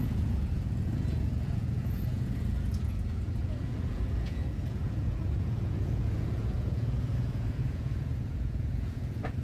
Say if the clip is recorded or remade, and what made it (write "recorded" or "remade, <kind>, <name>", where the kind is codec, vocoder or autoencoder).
remade, vocoder, Vocos